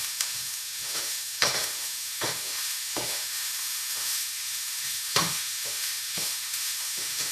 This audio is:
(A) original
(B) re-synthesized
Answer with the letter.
B